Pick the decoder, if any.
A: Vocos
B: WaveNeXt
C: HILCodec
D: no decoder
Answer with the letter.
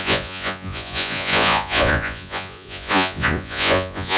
A